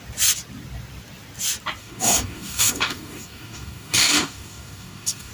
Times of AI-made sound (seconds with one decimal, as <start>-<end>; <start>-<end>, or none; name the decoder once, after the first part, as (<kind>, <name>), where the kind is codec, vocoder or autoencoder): 1.8-5.3 (codec, DAC)